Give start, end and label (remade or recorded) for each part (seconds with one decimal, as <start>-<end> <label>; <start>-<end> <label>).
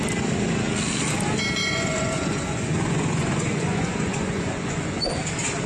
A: 0.0-1.6 recorded; 1.6-5.0 remade; 5.0-5.7 recorded